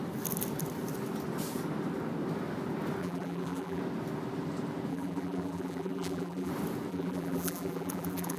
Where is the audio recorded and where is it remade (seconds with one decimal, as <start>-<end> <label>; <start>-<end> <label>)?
0.0-3.0 recorded; 3.0-3.8 remade; 3.8-4.9 recorded; 4.9-6.5 remade; 6.5-6.9 recorded; 6.9-8.4 remade